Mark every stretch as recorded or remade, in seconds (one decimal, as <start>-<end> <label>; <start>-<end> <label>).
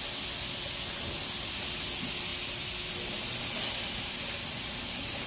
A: 0.0-5.3 recorded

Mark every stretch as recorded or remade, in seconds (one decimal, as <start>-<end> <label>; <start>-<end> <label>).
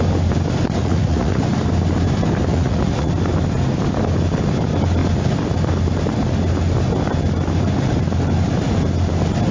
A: 0.0-0.8 recorded; 0.8-1.4 remade; 1.4-2.5 recorded; 2.5-3.1 remade; 3.1-9.5 recorded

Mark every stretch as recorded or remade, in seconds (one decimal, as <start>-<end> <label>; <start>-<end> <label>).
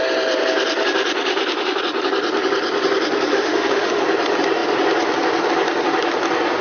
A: 0.0-1.3 recorded; 1.3-1.8 remade; 1.8-3.3 recorded; 3.3-4.0 remade; 4.0-6.6 recorded